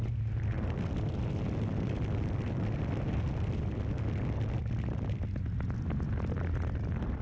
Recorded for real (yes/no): yes